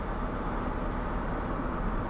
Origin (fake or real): real